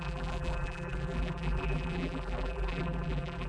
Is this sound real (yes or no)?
no